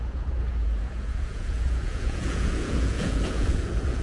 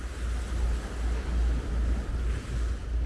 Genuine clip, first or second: second